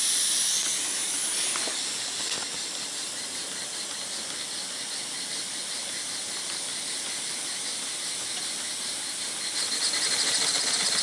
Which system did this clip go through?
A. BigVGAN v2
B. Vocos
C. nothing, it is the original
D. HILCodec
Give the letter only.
C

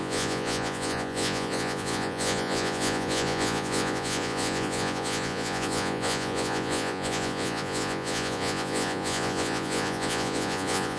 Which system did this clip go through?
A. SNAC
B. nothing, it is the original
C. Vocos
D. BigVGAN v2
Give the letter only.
C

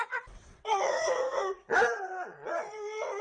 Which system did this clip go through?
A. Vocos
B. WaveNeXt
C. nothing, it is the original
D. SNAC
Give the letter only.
B